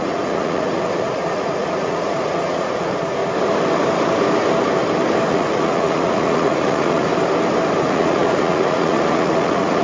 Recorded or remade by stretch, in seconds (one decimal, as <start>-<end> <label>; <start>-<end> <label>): 0.0-3.2 remade; 3.2-5.3 recorded; 5.3-7.1 remade; 7.1-7.8 recorded; 7.8-9.8 remade